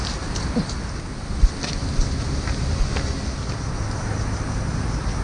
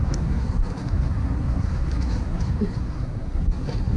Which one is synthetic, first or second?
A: second